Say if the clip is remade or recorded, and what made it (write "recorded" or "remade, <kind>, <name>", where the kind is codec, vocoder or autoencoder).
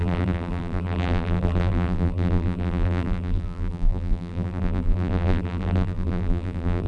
remade, vocoder, BigVGAN v2